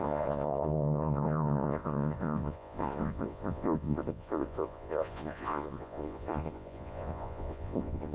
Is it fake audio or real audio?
fake